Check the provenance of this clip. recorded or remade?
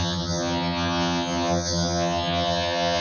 remade